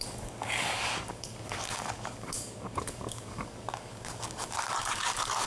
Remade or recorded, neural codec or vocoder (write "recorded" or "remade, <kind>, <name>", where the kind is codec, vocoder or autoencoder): remade, codec, DAC